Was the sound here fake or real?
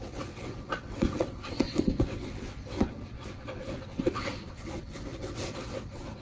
fake